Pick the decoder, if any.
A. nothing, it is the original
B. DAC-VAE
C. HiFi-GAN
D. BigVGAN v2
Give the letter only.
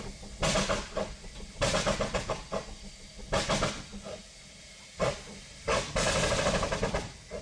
A